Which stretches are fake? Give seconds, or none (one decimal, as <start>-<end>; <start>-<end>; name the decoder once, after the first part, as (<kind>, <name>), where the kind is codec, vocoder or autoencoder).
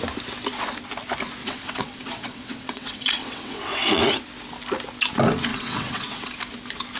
1.4-4.0 (vocoder, WaveNeXt); 5.5-6.3